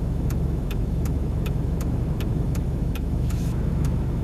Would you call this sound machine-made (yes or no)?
yes